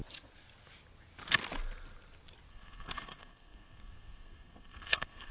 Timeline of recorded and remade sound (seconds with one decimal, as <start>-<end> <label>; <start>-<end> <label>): 0.0-2.5 recorded; 2.5-5.3 remade